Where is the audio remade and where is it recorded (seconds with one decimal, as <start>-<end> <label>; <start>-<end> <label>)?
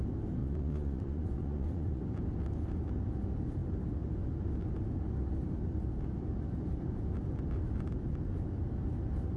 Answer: 0.0-0.4 recorded; 0.4-2.0 remade; 2.0-9.4 recorded